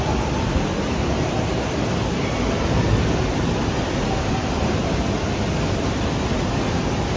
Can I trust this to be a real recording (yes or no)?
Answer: yes